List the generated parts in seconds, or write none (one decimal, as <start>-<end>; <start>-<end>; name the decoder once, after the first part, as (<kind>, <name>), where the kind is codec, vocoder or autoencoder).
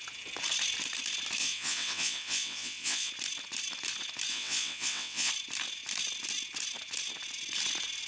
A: 1.4-3.1 (vocoder, WaveNeXt); 4.3-5.3